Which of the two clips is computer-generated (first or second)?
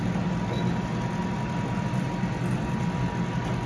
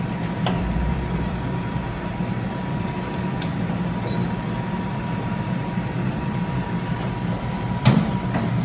second